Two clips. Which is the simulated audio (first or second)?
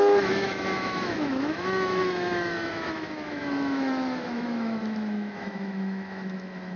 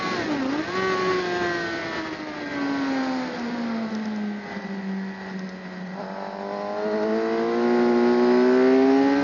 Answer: first